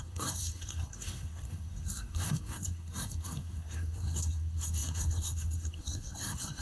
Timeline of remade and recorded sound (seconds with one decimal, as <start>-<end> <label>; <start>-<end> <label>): 0.0-6.6 remade